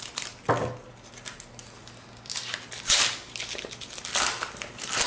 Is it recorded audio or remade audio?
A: recorded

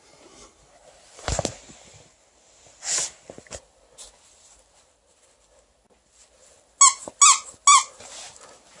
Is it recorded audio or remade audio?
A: recorded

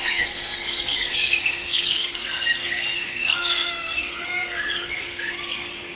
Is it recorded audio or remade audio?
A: remade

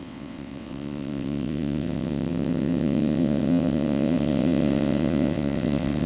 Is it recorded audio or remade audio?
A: remade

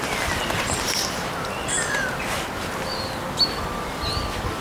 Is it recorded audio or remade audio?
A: recorded